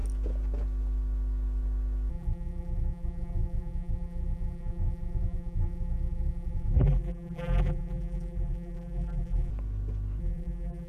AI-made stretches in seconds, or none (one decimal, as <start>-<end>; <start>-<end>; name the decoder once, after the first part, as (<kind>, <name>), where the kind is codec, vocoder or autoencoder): 2.1-9.5 (vocoder, BigVGAN v2); 10.2-10.9